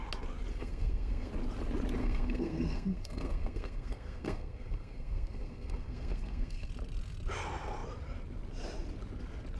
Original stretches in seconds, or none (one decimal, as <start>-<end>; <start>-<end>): 0.0-0.5; 1.3-2.0; 6.7-9.6